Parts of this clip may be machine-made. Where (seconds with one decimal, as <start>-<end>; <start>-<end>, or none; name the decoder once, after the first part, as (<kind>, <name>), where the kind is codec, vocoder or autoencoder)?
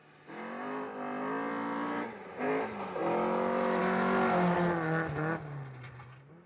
none